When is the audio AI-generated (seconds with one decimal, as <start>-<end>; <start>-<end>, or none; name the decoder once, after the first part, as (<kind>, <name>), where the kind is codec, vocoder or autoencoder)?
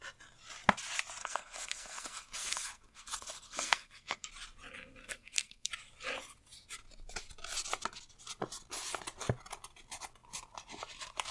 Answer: 1.2-4.3 (codec, SNAC); 5.0-5.7